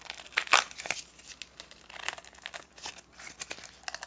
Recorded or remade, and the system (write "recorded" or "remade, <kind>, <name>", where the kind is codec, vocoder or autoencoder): recorded